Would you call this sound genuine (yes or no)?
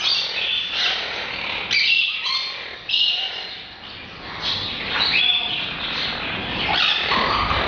yes